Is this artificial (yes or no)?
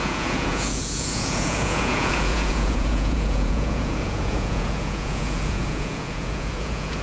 yes